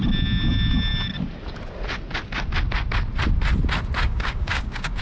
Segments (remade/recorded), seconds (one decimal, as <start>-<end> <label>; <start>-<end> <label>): 0.0-4.0 recorded; 4.0-5.0 remade